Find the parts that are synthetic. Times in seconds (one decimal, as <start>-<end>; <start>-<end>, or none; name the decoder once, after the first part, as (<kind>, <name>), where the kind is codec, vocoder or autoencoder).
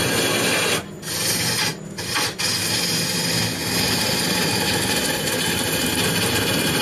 none